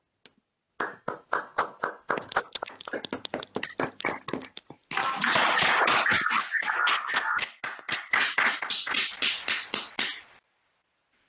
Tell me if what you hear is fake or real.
real